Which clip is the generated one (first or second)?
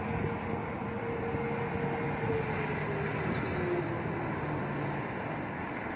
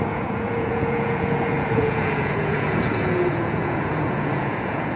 second